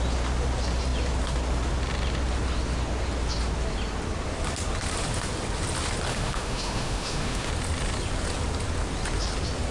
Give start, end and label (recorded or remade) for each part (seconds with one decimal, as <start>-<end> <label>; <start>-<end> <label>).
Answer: 0.0-6.1 recorded; 6.1-7.5 remade; 7.5-9.7 recorded